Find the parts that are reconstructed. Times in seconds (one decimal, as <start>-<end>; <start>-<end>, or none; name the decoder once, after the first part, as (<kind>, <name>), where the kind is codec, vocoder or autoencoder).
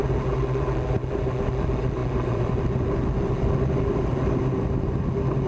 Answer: none